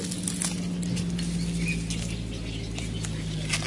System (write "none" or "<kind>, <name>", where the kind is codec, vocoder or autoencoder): none